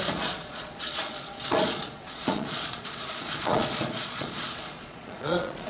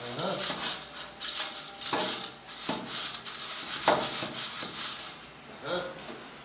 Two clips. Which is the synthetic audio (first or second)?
first